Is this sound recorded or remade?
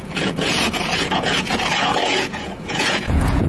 remade